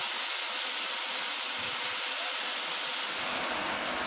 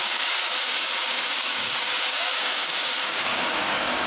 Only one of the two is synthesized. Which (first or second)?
second